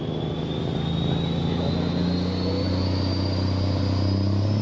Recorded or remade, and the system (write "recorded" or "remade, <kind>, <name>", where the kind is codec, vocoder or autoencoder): recorded